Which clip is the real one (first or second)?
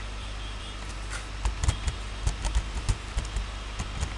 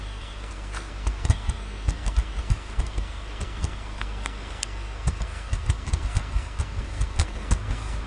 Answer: first